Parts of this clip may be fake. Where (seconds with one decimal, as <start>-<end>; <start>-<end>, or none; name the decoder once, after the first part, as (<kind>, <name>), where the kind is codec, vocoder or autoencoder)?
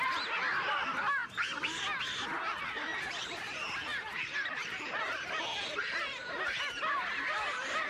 2.9-5.4 (vocoder, BigVGAN v2)